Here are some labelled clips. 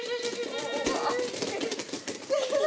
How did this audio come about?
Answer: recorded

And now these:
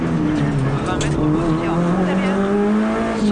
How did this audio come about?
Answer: recorded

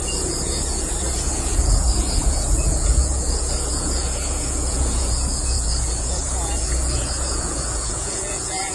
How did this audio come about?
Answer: remade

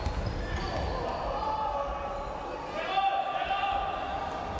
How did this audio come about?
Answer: recorded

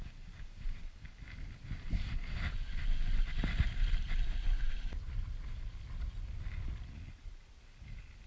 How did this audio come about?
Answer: recorded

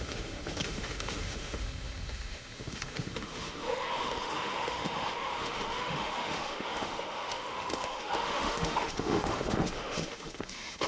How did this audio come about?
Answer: remade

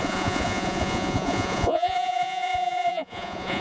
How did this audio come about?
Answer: remade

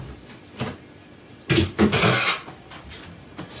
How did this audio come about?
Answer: remade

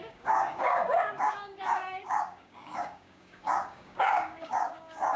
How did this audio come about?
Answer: remade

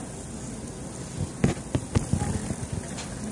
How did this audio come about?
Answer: recorded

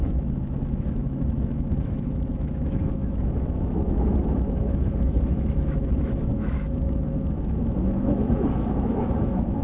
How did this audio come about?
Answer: remade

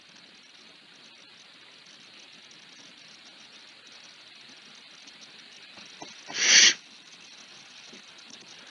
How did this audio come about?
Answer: recorded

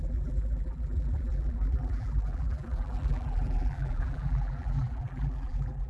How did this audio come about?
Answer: remade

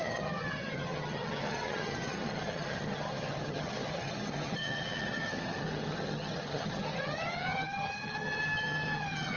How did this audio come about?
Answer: remade